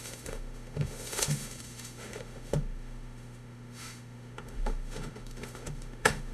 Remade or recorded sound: remade